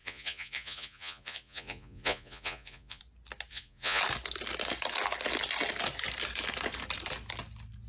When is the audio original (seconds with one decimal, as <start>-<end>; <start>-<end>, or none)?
3.0-3.5; 4.0-7.9